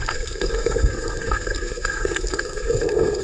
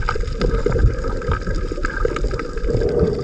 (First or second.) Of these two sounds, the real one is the second